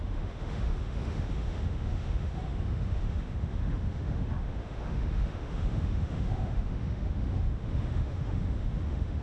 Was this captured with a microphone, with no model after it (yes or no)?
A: no